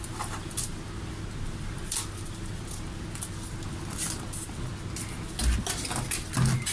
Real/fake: real